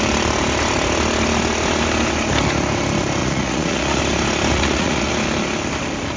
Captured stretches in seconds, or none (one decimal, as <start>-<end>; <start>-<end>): 0.0-3.2; 4.0-4.5; 5.1-6.2

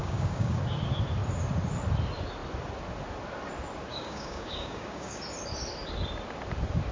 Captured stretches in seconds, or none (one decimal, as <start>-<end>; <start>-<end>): 0.6-3.9; 5.2-6.9

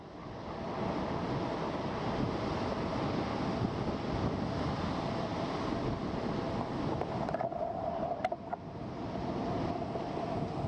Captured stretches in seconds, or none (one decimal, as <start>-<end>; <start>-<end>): 0.0-10.7

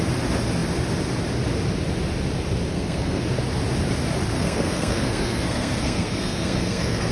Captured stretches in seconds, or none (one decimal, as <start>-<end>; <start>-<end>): 0.0-2.7; 3.2-4.4